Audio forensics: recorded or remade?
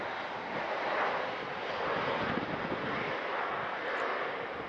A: recorded